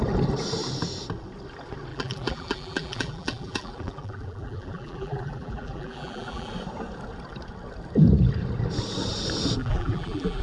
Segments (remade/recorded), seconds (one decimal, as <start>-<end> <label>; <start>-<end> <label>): 0.0-1.9 recorded; 1.9-6.5 remade; 6.5-9.6 recorded; 9.6-10.4 remade